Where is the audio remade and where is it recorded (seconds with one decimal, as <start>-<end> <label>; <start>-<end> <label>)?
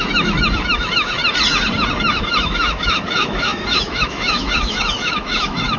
0.0-1.2 remade; 1.2-1.9 recorded; 1.9-5.8 remade